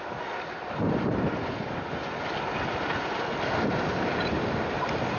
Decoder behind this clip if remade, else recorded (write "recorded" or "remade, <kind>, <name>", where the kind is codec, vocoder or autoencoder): recorded